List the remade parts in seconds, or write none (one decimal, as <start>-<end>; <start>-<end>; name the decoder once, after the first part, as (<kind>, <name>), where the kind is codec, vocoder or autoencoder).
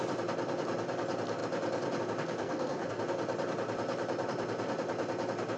2.4-3.0 (codec, SNAC)